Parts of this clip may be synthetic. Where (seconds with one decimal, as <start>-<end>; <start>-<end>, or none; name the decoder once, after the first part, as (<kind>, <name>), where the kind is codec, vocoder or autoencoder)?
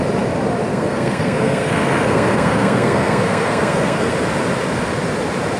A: 0.7-4.1 (codec, SNAC)